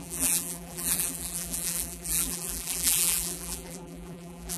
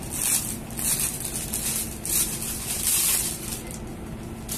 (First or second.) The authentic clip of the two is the second